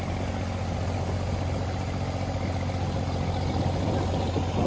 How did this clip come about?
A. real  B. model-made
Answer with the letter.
A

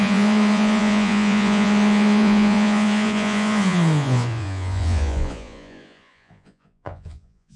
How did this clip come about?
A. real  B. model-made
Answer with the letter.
B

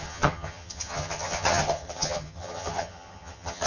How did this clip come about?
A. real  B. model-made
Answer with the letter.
B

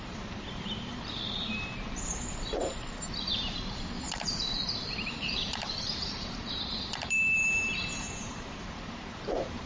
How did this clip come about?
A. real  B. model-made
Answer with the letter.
B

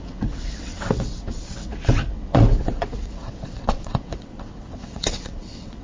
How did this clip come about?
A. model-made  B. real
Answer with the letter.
A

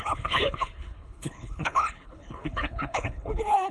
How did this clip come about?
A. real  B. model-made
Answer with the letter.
B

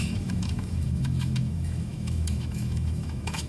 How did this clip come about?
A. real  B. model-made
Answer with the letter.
B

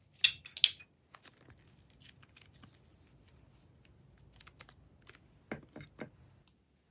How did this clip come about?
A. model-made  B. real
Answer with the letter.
B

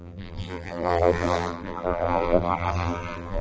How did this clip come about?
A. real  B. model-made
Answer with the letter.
B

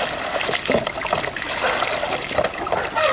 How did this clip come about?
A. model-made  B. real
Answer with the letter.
B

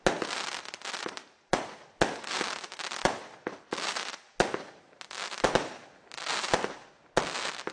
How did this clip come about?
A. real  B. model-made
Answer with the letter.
A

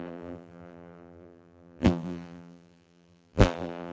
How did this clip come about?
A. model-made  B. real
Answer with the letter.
A